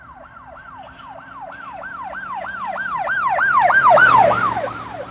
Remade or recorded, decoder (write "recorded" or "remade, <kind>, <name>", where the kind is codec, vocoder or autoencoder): recorded